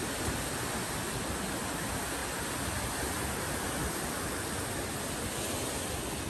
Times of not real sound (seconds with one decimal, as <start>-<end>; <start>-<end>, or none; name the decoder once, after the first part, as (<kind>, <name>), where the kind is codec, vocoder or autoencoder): none